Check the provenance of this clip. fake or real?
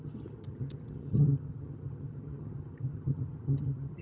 fake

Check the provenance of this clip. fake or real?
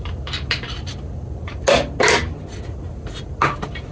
real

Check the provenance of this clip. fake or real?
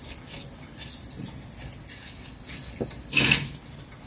real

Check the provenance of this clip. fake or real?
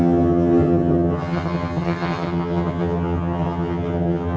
fake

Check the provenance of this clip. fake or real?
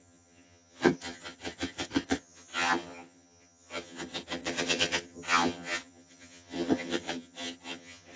fake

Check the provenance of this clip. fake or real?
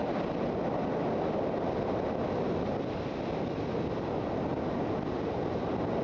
real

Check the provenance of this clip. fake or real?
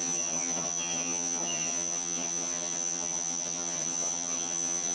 fake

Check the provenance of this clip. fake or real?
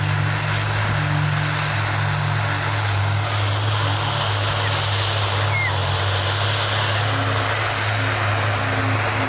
real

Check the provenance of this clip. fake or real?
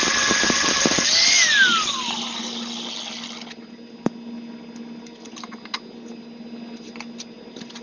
real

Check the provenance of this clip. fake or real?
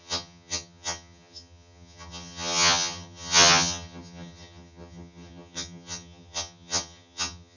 fake